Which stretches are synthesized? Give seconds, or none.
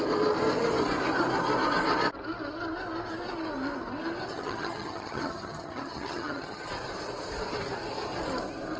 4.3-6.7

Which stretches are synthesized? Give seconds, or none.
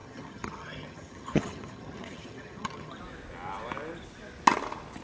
0.0-3.0